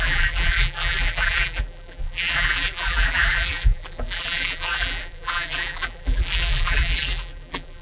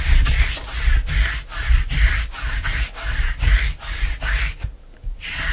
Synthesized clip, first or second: first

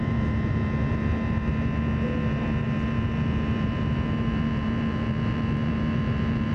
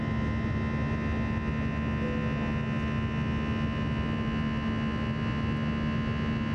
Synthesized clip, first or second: first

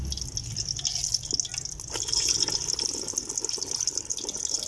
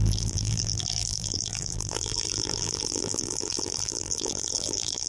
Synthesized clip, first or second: second